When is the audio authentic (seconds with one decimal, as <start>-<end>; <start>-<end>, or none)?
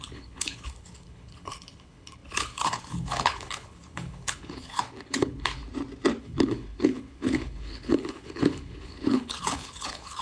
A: 5.6-6.2